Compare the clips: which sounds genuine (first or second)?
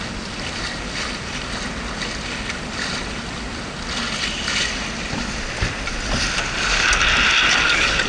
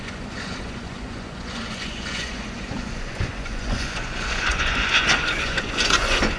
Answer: first